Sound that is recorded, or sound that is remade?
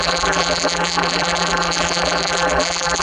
remade